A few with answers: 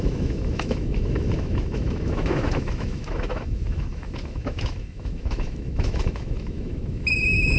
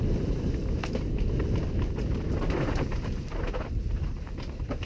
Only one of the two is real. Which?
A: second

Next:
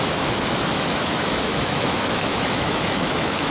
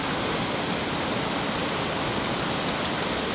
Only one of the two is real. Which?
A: second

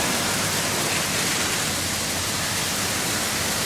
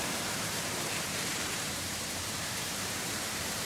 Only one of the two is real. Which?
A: first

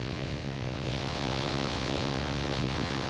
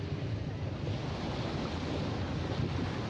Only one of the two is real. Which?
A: second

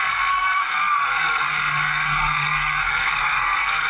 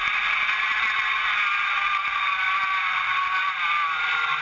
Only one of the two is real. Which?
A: second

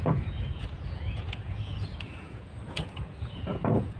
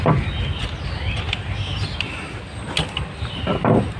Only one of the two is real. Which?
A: second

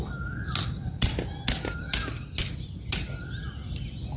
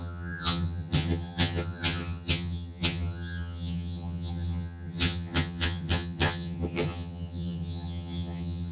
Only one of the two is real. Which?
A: first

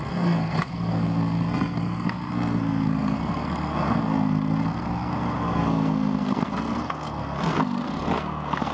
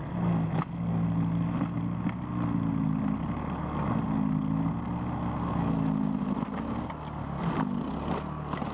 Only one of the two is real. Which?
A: second